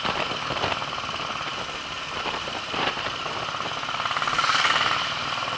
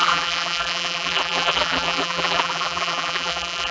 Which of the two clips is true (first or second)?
first